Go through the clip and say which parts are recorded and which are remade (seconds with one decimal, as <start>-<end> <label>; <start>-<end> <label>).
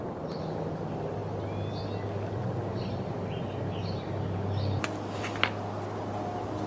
0.0-6.7 recorded